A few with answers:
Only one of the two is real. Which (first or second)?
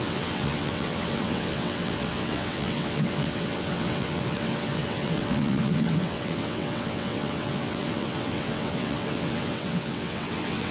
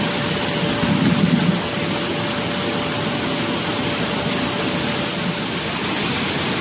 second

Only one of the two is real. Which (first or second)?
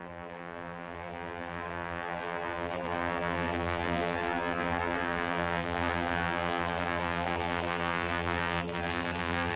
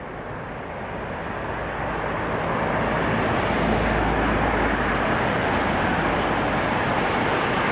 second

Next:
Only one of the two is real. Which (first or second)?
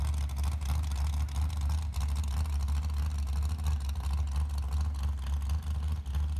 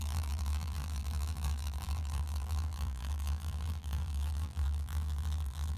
first